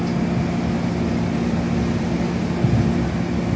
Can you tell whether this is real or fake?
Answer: real